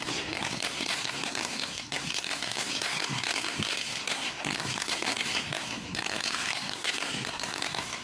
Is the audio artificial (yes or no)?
yes